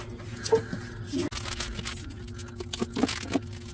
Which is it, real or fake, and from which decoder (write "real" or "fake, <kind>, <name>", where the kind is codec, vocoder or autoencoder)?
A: real